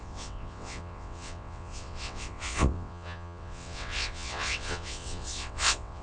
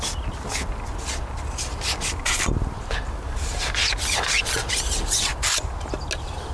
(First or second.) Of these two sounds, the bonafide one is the second